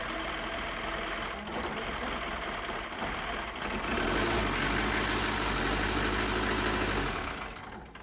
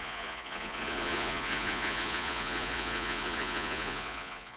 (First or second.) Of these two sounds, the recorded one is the first